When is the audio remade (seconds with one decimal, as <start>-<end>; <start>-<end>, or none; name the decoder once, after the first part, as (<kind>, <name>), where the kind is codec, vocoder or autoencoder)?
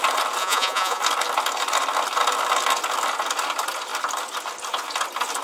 0.4-1.0 (vocoder, Vocos)